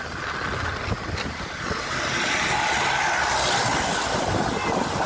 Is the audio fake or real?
real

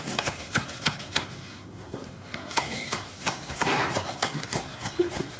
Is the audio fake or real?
fake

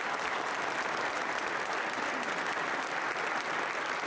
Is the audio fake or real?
real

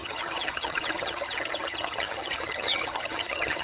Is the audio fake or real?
fake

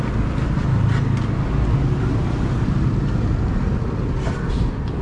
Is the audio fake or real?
real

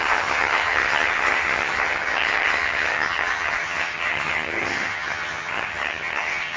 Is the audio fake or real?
fake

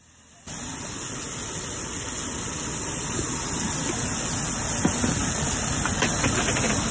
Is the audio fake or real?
real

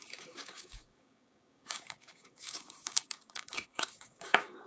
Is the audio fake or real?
fake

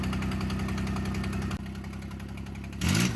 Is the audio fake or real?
real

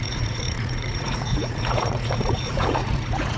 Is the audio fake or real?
fake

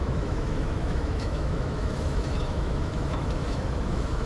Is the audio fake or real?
fake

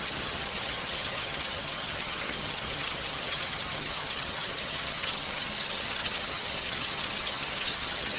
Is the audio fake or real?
fake